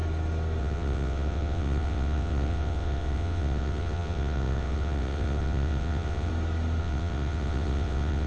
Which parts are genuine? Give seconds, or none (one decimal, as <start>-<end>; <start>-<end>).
0.0-0.6; 6.3-6.8